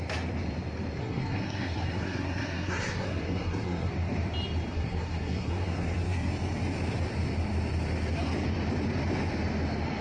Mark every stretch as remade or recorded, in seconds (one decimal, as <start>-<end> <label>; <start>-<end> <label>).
0.0-1.0 recorded; 1.0-3.9 remade; 3.9-4.7 recorded; 4.7-6.3 remade; 6.3-10.0 recorded